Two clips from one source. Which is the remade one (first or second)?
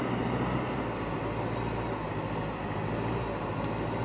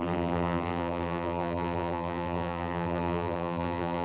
second